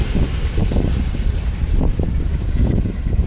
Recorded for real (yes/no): no